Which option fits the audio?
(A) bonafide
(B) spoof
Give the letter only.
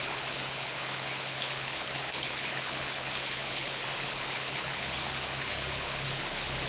B